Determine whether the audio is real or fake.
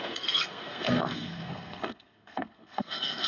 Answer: fake